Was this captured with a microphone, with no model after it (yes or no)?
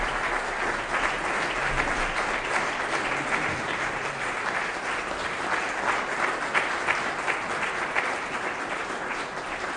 yes